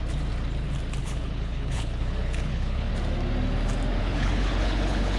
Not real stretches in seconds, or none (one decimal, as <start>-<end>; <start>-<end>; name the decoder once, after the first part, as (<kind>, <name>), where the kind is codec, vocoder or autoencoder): 1.0-2.9 (codec, HILCodec); 4.0-5.2